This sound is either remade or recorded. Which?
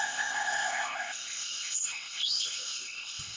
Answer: remade